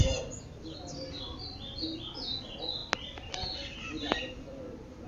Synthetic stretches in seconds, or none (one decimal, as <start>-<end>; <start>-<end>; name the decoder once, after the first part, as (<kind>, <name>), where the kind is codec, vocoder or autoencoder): none